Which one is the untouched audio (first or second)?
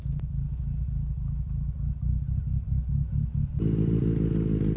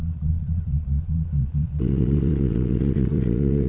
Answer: first